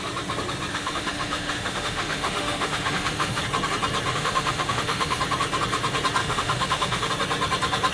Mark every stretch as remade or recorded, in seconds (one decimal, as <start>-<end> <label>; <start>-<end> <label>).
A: 0.0-0.7 recorded; 0.7-3.4 remade; 3.4-4.1 recorded; 4.1-5.2 remade; 5.2-6.2 recorded; 6.2-7.1 remade; 7.1-7.9 recorded